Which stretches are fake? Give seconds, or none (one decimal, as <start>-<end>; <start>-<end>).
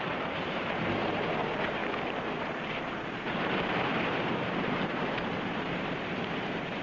0.0-1.8; 2.4-6.8